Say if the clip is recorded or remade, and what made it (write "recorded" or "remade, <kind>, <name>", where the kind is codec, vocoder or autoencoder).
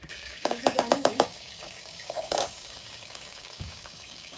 remade, codec, DAC